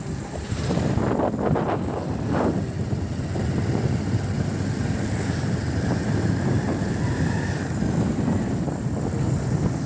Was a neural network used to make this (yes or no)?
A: no